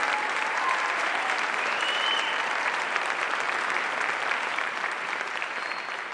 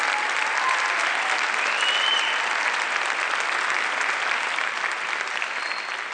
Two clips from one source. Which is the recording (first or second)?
second